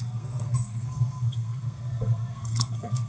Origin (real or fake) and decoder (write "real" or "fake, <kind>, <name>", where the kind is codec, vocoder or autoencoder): fake, codec, SNAC